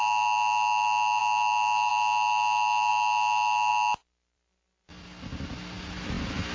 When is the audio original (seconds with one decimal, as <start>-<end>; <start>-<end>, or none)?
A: 0.0-6.5